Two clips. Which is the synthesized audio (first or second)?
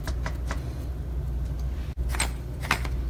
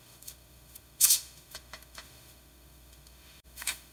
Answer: second